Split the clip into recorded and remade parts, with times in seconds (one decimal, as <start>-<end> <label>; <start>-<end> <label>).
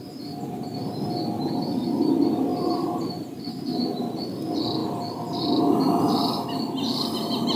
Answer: 0.0-2.5 recorded; 2.5-3.4 remade; 3.4-7.6 recorded